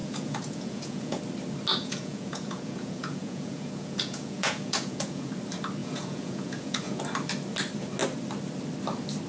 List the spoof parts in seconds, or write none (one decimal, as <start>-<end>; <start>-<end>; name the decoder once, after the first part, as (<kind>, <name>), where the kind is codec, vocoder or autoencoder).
0.0-1.2 (vocoder, Vocos); 1.7-5.3; 5.8-7.0